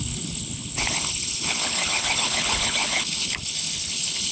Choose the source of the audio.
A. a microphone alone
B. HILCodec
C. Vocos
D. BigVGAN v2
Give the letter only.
B